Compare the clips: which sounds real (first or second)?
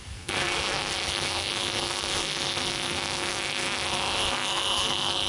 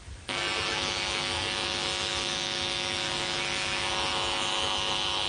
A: second